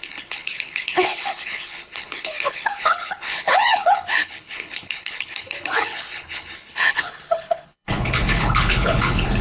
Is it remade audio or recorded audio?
remade